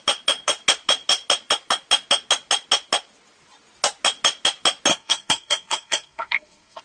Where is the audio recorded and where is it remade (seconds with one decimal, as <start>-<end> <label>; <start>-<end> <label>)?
0.0-4.9 recorded; 4.9-6.8 remade